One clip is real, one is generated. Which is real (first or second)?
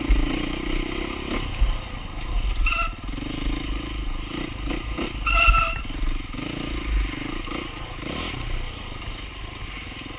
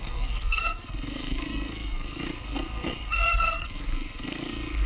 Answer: first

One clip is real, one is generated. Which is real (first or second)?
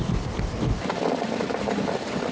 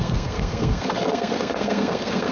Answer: first